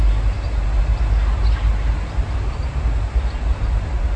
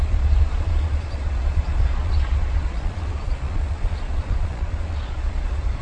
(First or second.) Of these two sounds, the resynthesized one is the second